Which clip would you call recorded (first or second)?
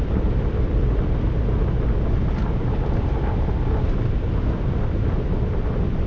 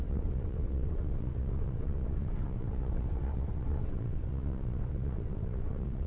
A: first